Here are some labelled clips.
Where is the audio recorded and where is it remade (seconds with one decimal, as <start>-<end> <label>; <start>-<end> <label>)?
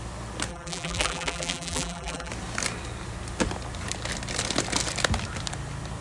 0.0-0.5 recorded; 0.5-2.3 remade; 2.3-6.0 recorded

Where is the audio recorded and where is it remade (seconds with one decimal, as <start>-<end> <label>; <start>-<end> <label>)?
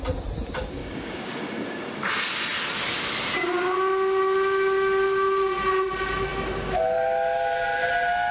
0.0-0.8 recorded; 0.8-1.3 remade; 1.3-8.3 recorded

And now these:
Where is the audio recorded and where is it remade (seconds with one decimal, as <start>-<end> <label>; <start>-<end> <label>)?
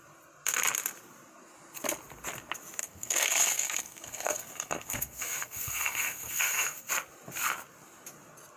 0.0-2.8 recorded; 2.8-6.9 remade; 6.9-8.6 recorded